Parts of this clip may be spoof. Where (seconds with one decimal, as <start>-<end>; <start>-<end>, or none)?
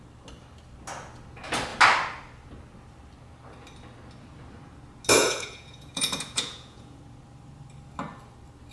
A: 5.2-7.0